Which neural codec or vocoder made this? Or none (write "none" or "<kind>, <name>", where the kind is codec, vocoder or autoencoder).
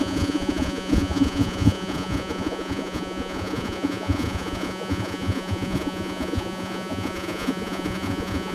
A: vocoder, Vocos